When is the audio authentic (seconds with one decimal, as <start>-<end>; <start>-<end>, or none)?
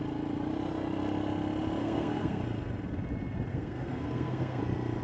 0.0-1.8; 2.4-3.5; 4.6-5.0